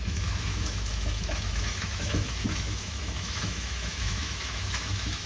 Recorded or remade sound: remade